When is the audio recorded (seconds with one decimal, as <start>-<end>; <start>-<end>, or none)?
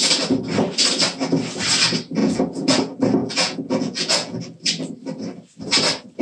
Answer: 0.0-2.2; 2.8-3.2; 4.4-6.2